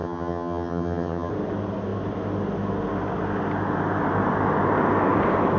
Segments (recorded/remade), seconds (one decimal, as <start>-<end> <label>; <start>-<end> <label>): 0.0-1.3 remade; 1.3-5.6 recorded